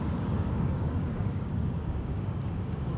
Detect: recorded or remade remade